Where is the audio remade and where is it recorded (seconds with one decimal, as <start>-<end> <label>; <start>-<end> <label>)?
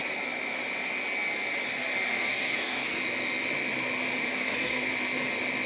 0.0-2.1 recorded; 2.1-3.0 remade; 3.0-4.2 recorded; 4.2-4.9 remade; 4.9-5.7 recorded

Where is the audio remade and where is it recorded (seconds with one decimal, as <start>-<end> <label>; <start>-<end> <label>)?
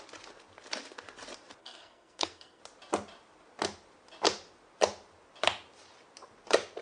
0.0-1.6 recorded; 1.6-2.6 remade; 2.6-6.8 recorded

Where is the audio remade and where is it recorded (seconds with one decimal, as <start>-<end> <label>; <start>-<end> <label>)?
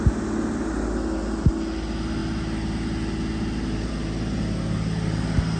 0.0-5.6 recorded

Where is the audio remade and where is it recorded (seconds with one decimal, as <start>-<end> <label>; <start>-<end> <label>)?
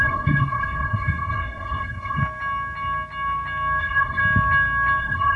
0.0-2.2 remade; 2.2-3.8 recorded; 3.8-4.2 remade; 4.2-5.0 recorded; 5.0-5.4 remade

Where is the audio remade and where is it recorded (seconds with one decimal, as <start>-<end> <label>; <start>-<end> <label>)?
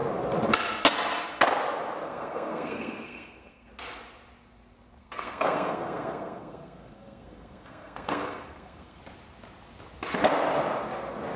0.0-2.0 recorded; 2.0-3.7 remade; 3.7-5.0 recorded; 5.0-9.0 remade; 9.0-11.4 recorded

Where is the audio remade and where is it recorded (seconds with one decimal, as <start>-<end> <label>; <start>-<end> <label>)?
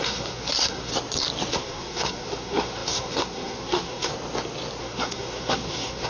0.0-0.9 remade; 0.9-1.5 recorded; 1.5-4.1 remade; 4.1-4.8 recorded; 4.8-6.1 remade